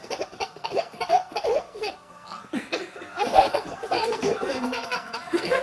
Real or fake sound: fake